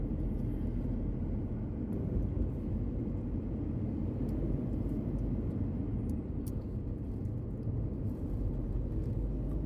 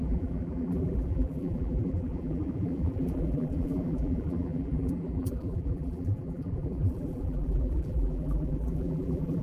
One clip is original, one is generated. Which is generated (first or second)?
second